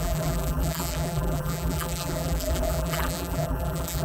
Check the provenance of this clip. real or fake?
fake